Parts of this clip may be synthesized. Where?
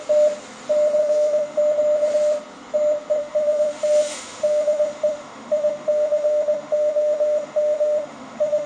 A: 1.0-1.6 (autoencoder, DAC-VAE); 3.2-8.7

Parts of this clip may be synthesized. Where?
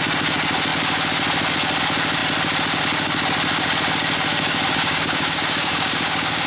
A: 4.3-6.5 (codec, DAC)